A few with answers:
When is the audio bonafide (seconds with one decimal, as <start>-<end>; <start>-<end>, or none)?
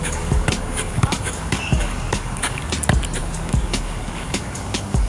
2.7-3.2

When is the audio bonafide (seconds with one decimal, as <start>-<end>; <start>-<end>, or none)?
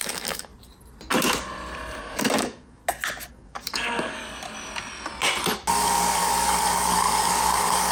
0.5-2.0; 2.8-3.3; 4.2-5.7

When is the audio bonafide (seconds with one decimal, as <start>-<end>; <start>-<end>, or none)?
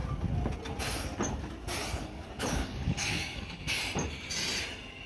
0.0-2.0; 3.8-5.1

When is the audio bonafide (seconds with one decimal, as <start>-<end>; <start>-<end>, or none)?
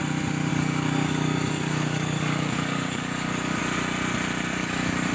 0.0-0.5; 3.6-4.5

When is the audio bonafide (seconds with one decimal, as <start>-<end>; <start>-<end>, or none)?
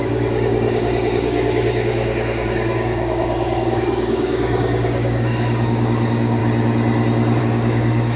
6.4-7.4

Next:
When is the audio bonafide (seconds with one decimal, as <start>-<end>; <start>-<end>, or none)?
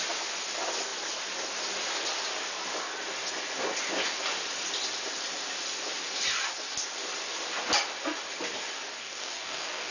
0.0-9.0